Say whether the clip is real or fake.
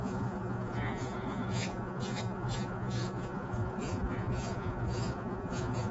fake